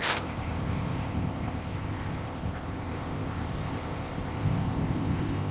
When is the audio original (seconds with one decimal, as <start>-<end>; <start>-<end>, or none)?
none